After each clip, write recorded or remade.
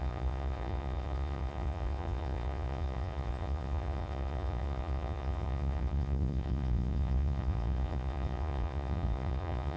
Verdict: remade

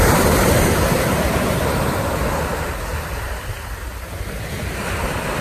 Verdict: recorded